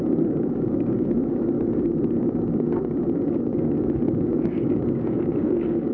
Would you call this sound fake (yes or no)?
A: yes